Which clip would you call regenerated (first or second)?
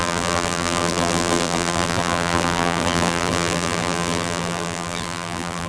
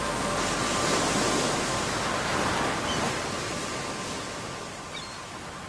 first